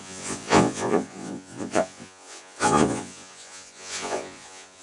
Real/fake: fake